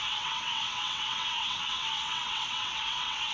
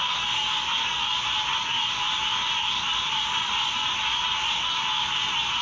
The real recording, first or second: second